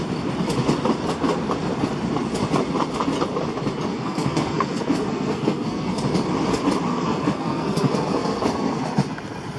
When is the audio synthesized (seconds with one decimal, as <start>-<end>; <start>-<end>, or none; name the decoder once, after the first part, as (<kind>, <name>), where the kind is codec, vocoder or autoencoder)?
3.9-6.0 (codec, SNAC); 6.9-8.9

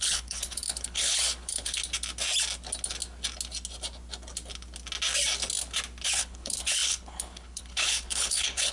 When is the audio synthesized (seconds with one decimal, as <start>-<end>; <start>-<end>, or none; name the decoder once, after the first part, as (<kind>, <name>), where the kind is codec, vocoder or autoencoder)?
0.0-1.8 (codec, HILCodec); 6.1-8.7

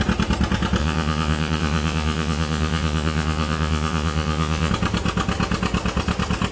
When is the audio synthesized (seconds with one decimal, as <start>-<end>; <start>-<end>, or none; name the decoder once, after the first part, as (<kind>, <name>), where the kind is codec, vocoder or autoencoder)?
0.8-4.7 (vocoder, Vocos)